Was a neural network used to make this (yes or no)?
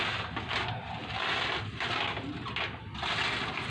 no